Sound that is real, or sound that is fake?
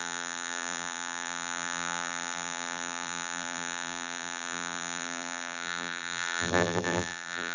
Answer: fake